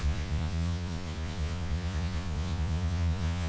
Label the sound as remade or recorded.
remade